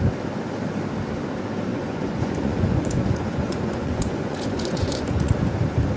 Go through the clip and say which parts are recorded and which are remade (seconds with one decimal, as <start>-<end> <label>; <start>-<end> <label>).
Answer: 0.0-1.7 recorded; 1.7-5.3 remade; 5.3-6.0 recorded